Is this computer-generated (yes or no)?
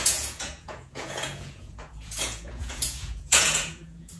yes